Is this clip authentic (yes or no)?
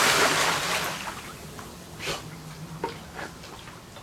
yes